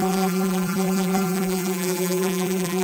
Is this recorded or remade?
remade